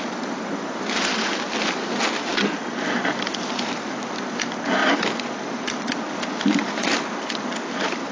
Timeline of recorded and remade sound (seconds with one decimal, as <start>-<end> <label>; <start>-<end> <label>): 0.0-4.8 recorded; 4.8-8.1 remade